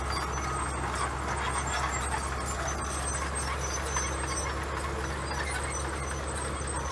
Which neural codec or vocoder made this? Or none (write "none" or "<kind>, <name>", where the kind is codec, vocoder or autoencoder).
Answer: none